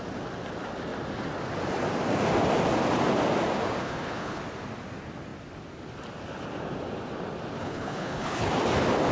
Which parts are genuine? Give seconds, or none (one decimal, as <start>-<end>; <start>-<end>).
0.0-3.8; 4.4-7.6; 8.5-9.1